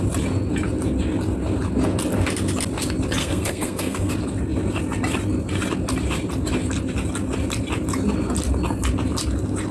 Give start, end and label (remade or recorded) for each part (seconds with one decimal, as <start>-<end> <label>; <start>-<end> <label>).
0.0-3.2 recorded; 3.2-4.1 remade; 4.1-9.7 recorded